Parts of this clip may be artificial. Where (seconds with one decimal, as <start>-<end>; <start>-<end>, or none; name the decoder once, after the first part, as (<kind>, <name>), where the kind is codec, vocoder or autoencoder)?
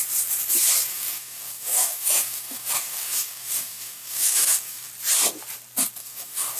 0.9-4.9 (codec, DAC); 6.0-6.6